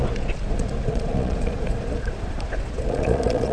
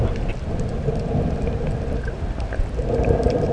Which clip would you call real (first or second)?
second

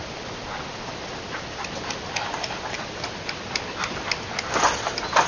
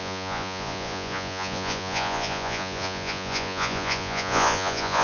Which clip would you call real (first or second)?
first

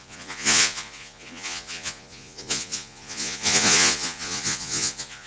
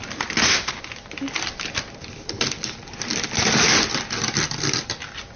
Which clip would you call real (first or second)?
second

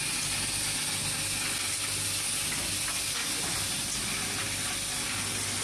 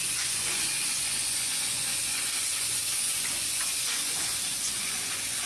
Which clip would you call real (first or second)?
first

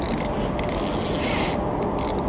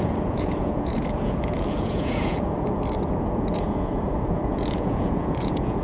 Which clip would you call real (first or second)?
first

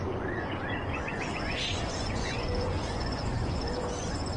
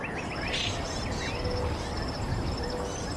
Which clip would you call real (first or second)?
second